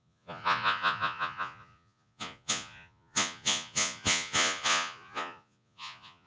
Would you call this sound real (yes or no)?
no